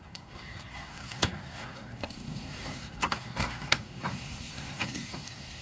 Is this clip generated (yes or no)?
yes